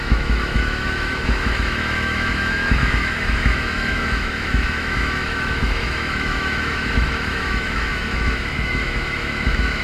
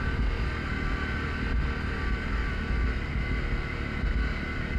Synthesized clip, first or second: first